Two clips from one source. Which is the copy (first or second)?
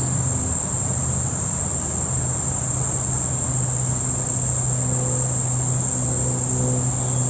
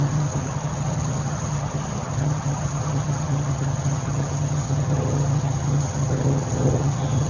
second